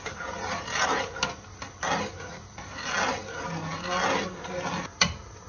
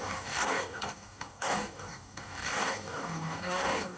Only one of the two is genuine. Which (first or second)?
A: first